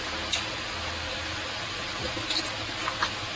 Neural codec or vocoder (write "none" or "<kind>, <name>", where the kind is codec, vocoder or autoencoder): none